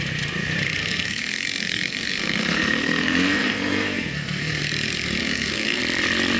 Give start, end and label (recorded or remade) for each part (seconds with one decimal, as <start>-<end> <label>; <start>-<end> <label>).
0.0-0.8 recorded; 0.8-4.6 remade; 4.6-5.2 recorded; 5.2-5.8 remade; 5.8-6.4 recorded